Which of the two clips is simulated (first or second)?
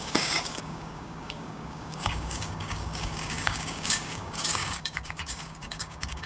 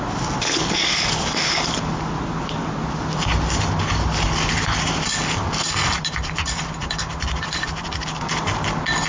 first